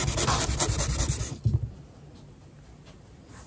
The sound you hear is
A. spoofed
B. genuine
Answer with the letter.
B